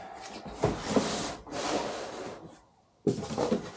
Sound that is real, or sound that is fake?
real